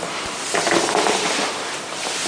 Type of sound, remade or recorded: remade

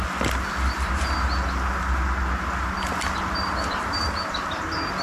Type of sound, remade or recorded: recorded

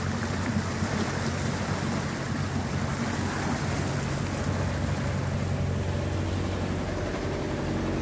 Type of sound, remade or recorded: recorded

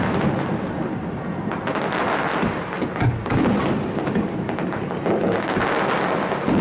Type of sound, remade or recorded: recorded